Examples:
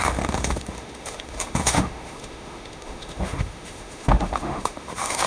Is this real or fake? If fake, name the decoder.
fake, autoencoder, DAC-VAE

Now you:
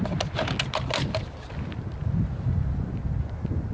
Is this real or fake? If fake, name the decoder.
real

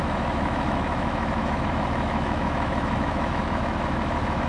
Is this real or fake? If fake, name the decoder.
fake, autoencoder, DAC-VAE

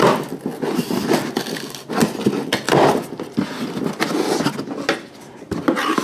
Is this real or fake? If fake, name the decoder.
real